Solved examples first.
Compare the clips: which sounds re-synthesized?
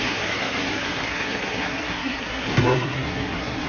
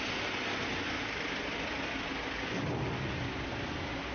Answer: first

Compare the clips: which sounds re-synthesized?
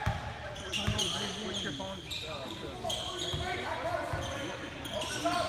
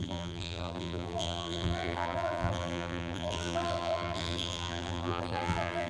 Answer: second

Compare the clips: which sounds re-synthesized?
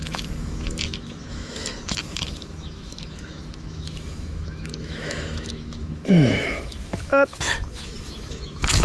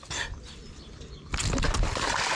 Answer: first